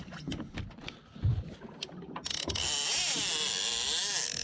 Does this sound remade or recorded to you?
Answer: recorded